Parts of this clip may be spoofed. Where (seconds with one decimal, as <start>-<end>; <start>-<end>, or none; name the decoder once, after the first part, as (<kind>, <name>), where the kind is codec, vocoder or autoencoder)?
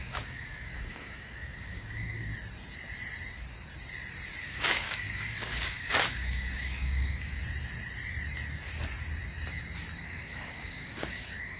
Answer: 0.0-2.3 (codec, DAC); 4.4-7.4; 10.0-11.6